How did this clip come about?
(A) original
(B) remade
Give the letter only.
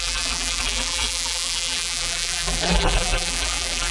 B